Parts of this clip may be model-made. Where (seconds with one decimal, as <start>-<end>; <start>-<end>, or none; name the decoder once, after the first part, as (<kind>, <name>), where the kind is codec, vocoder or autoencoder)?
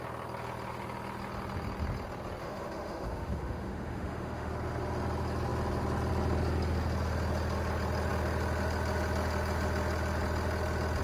2.4-4.5 (autoencoder, DAC-VAE)